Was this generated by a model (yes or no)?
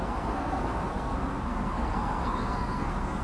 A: yes